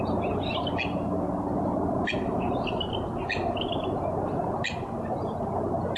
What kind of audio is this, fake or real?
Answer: real